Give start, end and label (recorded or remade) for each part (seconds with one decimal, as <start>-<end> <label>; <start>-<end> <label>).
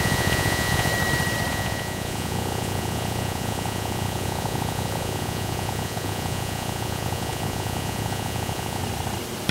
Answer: 0.0-0.9 remade; 0.9-1.5 recorded; 1.5-8.8 remade; 8.8-9.5 recorded